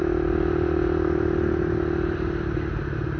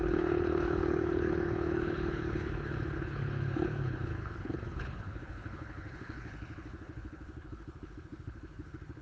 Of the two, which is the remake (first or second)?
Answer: second